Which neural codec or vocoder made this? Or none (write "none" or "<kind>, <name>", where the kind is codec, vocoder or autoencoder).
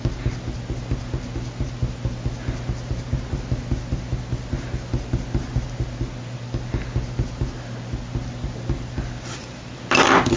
none